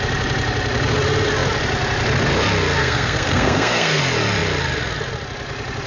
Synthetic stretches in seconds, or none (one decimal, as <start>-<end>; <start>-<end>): 2.8-4.0